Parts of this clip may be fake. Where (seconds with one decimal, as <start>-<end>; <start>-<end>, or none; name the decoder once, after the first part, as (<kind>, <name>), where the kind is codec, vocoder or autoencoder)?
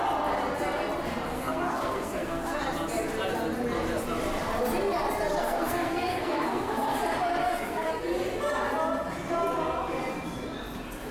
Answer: 1.3-2.6 (codec, SNAC); 5.4-7.0; 7.4-7.9